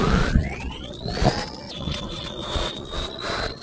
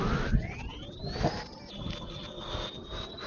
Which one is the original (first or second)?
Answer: second